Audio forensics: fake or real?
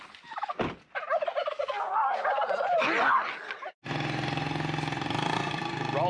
real